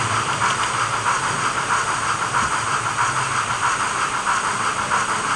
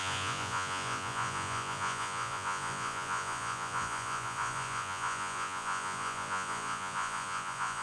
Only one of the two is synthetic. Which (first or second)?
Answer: second